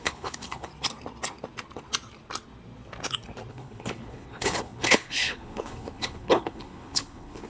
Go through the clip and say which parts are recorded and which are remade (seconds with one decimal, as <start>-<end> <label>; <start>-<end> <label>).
0.0-0.7 remade; 0.7-3.5 recorded; 3.5-7.5 remade